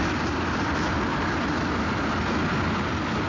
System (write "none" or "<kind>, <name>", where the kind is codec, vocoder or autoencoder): none